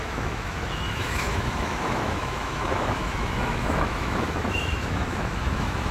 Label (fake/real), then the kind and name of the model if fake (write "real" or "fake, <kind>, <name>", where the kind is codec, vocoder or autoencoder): fake, autoencoder, DAC-VAE